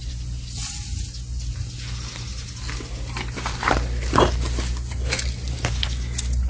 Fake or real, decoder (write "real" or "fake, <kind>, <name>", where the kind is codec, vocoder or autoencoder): real